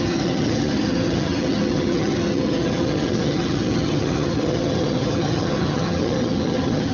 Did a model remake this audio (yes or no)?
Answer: yes